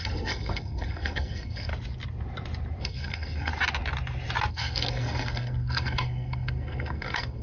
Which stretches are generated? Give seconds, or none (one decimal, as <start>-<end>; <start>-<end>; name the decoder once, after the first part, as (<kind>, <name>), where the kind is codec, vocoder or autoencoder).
0.0-1.7 (codec, SNAC); 2.8-3.5; 4.5-7.4